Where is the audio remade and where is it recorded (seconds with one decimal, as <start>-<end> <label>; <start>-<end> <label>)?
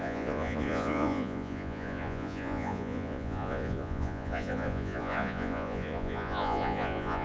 0.0-7.2 remade